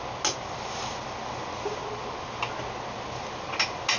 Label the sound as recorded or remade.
recorded